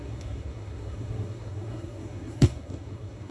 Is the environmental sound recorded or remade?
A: remade